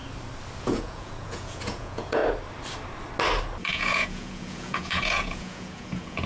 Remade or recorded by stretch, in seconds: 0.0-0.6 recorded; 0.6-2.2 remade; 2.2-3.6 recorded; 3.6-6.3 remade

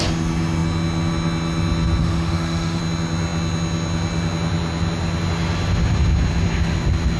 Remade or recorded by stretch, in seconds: 0.0-2.0 recorded; 2.0-2.8 remade; 2.8-7.2 recorded

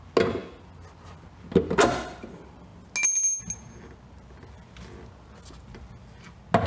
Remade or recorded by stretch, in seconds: 0.0-6.7 recorded

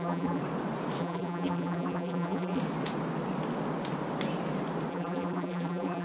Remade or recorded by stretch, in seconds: 0.0-0.4 remade; 0.4-1.0 recorded; 1.0-2.6 remade; 2.6-4.9 recorded; 4.9-6.0 remade